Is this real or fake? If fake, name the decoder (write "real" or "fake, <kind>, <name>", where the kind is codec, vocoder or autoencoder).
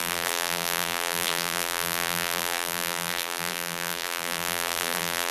fake, vocoder, BigVGAN v2